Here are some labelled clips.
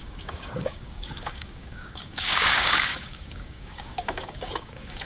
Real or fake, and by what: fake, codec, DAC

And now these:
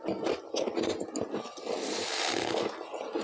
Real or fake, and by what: real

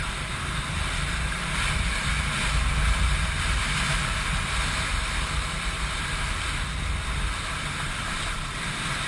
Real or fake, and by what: real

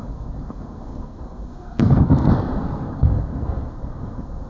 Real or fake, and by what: fake, codec, SNAC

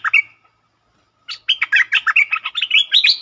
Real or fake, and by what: real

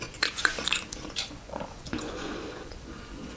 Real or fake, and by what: fake, vocoder, Vocos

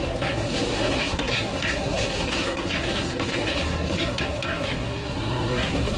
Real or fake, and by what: fake, codec, SNAC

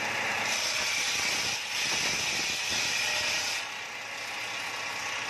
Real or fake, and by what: real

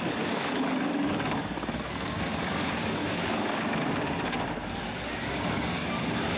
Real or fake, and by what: fake, codec, DAC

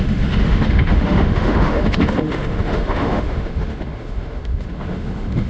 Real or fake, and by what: fake, autoencoder, DAC-VAE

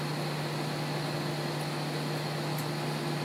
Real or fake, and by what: real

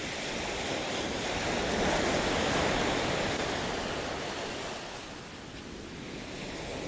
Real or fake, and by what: real